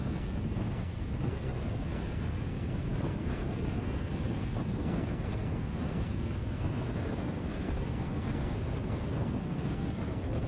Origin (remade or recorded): remade